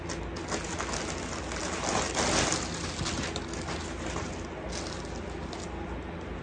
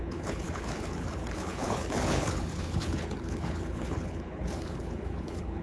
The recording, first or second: first